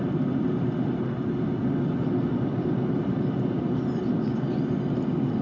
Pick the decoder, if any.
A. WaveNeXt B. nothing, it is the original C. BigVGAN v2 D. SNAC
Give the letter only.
B